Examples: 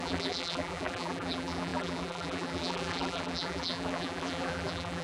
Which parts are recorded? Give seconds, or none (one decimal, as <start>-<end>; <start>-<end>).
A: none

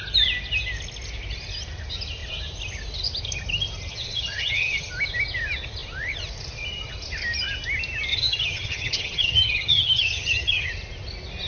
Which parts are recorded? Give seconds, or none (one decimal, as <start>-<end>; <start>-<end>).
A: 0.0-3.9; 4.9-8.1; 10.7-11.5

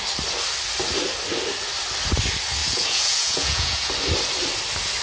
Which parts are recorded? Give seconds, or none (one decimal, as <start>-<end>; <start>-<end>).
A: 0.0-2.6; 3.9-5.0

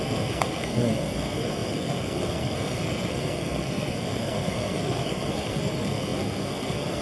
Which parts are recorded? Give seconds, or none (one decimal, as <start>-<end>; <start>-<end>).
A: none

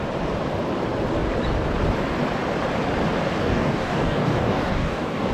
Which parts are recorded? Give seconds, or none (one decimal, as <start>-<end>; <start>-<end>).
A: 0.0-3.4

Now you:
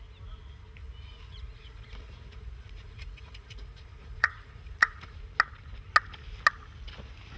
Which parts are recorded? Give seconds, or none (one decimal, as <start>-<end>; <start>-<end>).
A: 0.0-0.8; 5.2-7.4